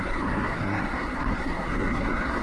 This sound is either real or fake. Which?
fake